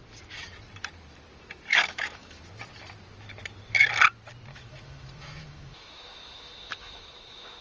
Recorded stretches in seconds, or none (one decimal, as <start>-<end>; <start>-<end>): 0.0-1.7; 2.4-4.5

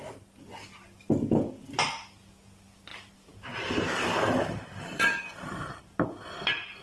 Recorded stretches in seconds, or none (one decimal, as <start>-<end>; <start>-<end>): 0.0-2.9; 5.2-6.8

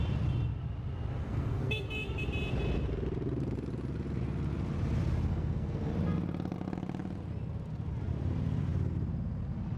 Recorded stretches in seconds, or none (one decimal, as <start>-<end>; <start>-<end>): 0.0-1.2; 1.9-5.3; 5.9-9.8